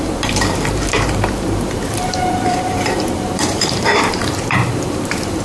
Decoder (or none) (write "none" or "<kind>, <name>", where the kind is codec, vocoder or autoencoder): vocoder, BigVGAN v2